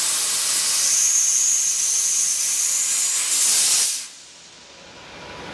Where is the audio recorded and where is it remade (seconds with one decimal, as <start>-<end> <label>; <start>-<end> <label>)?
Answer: 0.0-5.5 recorded